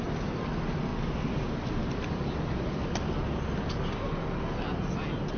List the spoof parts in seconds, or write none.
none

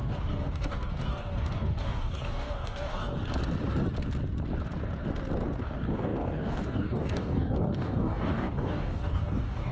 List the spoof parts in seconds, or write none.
0.0-3.1 (codec, DAC); 5.6-9.7

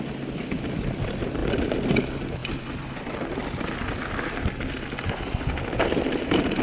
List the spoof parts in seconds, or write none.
none